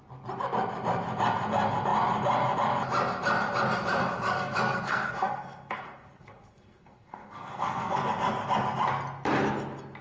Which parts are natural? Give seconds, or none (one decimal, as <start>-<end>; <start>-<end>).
0.0-4.0; 8.0-10.0